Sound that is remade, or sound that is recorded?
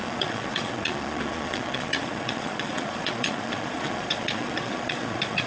remade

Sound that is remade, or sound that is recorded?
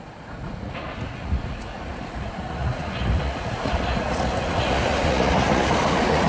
remade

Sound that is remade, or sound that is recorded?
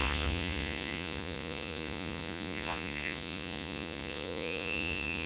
remade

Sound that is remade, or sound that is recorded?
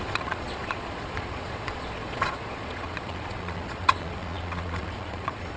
remade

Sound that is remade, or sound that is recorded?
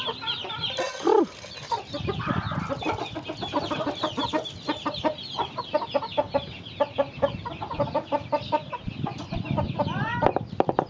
recorded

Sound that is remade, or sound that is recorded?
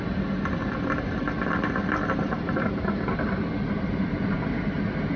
recorded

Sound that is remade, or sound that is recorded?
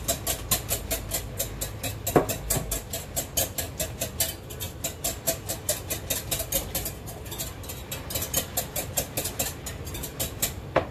recorded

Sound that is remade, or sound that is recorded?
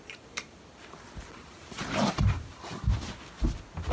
recorded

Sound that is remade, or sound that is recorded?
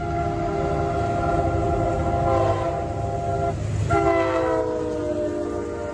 recorded